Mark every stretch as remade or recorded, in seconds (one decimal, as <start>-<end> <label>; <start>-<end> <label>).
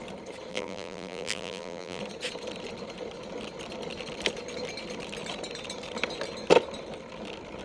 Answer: 0.0-0.5 recorded; 0.5-2.0 remade; 2.0-7.6 recorded